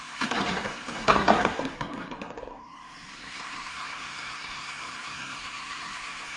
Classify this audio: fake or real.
fake